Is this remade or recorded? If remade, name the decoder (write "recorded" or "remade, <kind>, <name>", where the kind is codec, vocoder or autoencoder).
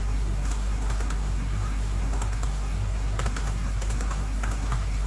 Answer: remade, codec, SNAC